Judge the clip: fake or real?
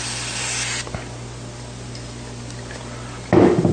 real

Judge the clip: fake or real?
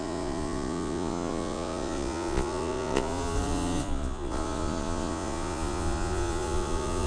fake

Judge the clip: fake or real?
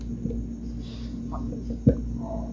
real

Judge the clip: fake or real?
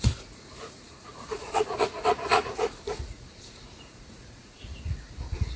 fake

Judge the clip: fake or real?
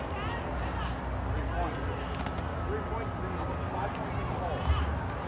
real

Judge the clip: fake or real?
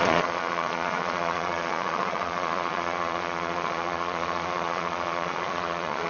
fake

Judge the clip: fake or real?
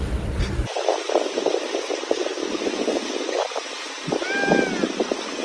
real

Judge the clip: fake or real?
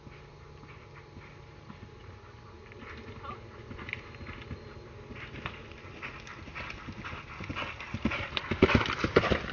real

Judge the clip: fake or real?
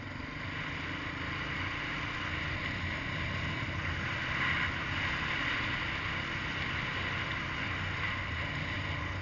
real